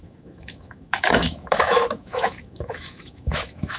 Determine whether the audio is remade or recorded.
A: remade